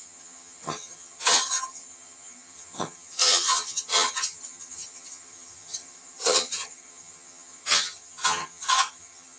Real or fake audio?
fake